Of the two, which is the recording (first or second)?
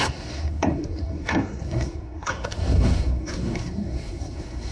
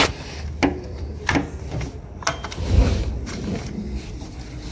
second